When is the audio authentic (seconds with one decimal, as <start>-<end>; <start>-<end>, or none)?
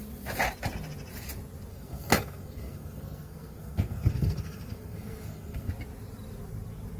0.0-1.7; 5.7-7.0